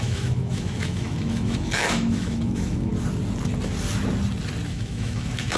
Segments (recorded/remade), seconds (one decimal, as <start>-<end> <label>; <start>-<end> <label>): 0.0-2.9 remade; 2.9-4.7 recorded; 4.7-5.6 remade